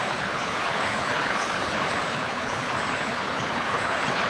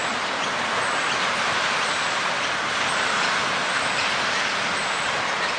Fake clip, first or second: first